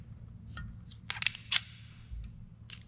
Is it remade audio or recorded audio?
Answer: recorded